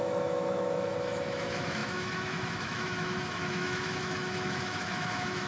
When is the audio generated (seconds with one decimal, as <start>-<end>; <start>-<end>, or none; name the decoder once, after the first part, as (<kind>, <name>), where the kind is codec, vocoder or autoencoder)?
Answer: 0.0-5.5 (autoencoder, DAC-VAE)